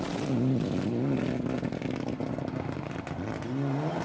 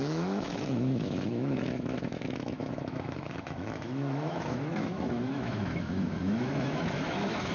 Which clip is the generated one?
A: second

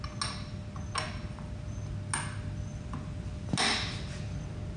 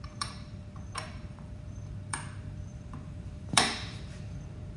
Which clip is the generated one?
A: second